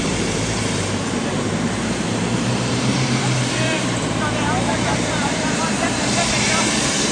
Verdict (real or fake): fake